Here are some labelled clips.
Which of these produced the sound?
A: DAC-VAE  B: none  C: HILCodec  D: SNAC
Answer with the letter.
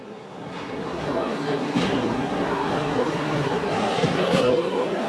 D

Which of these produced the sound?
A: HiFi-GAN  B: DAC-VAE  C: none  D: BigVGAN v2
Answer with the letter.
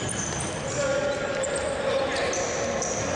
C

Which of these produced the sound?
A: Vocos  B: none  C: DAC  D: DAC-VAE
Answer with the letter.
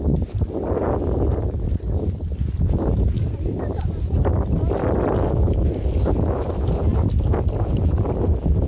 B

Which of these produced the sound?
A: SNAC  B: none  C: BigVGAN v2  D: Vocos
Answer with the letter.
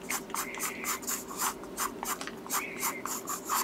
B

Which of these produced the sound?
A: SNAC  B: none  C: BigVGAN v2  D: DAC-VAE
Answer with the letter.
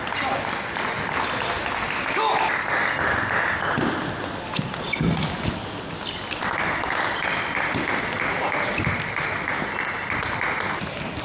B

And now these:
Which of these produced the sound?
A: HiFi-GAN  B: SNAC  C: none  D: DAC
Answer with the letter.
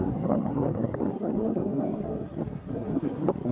B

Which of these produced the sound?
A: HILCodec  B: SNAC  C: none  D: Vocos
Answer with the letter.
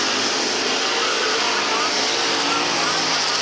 C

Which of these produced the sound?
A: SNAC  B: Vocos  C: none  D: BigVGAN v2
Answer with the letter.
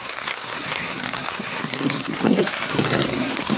A